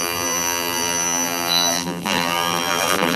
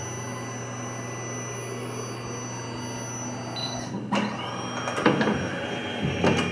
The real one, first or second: second